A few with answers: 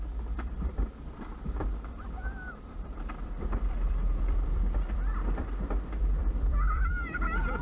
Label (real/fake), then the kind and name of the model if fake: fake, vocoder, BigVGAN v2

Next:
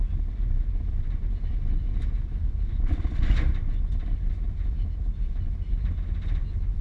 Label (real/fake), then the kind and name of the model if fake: real